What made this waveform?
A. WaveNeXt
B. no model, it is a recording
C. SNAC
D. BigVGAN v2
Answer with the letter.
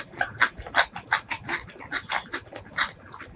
B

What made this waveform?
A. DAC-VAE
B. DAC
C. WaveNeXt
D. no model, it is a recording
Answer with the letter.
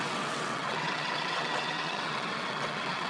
C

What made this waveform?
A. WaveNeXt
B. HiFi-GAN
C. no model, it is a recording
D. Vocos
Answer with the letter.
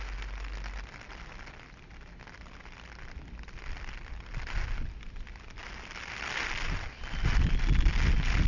C